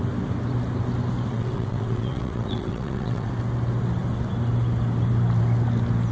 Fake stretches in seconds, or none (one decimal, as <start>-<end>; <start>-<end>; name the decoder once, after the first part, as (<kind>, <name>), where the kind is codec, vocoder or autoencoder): 1.3-3.3 (vocoder, WaveNeXt)